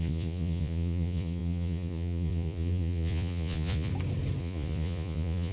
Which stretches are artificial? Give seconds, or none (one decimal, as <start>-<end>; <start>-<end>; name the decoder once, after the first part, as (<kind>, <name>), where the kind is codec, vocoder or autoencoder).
0.0-3.9 (vocoder, Vocos); 4.4-5.5